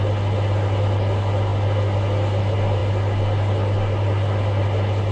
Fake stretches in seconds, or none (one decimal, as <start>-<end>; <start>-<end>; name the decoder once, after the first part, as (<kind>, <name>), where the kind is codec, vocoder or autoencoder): none